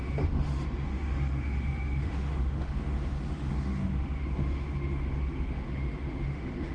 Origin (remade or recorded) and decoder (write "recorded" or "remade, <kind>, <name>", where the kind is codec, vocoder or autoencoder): remade, autoencoder, DAC-VAE